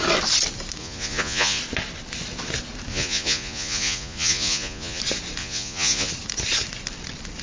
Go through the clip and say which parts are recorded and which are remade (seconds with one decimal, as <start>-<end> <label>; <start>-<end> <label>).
0.0-0.8 recorded; 0.8-1.6 remade; 1.6-2.9 recorded; 2.9-5.0 remade; 5.0-5.4 recorded; 5.4-6.1 remade; 6.1-7.4 recorded

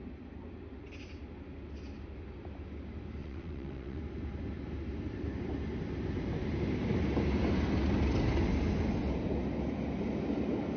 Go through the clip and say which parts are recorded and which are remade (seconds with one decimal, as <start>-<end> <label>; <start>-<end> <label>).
0.0-3.2 recorded; 3.2-4.0 remade; 4.0-10.8 recorded